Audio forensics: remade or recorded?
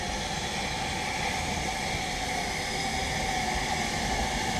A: recorded